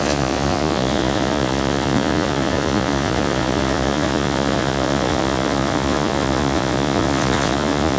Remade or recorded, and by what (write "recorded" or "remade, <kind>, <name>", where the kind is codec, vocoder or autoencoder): remade, vocoder, Vocos